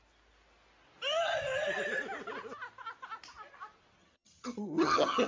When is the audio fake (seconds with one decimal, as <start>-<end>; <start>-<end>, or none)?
4.0-5.3